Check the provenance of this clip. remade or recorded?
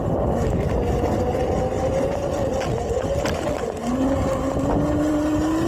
recorded